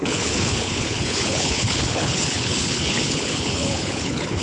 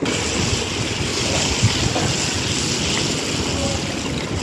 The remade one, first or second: first